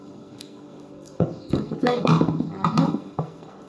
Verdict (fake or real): fake